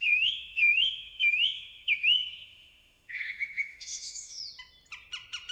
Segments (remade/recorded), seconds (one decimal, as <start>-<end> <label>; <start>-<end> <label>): 0.0-4.4 remade; 4.4-5.5 recorded